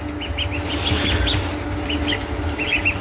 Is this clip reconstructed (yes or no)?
no